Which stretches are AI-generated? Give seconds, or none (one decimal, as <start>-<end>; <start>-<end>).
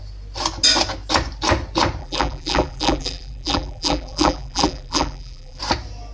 2.0-5.6